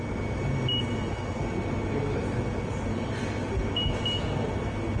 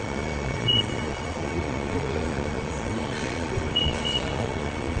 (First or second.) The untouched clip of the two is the first